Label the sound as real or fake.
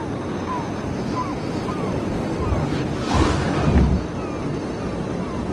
real